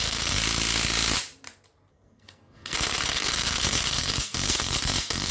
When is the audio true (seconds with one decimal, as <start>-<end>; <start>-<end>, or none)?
0.4-1.9